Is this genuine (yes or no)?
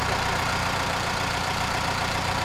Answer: no